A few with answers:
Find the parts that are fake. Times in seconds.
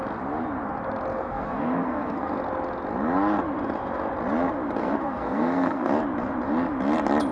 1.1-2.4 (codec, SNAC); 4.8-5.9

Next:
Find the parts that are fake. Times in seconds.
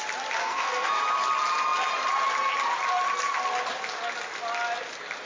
0.4-1.0 (codec, SNAC)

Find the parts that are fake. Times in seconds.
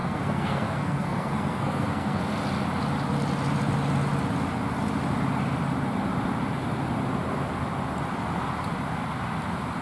0.0-2.2 (codec, SNAC)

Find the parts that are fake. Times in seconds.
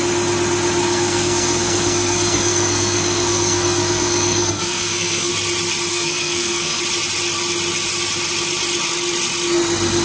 0.8-5.3 (codec, SNAC); 5.9-6.8